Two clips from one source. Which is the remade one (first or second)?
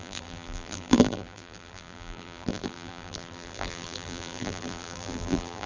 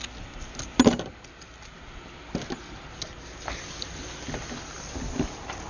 first